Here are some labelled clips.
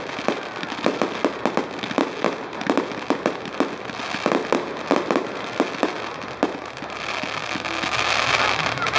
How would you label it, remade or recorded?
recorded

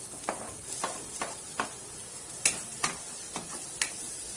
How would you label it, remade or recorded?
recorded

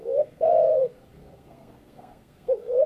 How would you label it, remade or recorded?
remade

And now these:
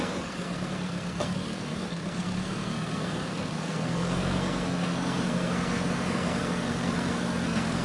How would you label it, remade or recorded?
remade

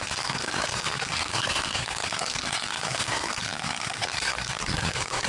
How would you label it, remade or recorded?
remade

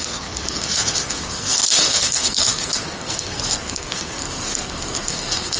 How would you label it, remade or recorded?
remade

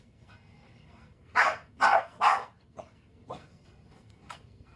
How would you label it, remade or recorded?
remade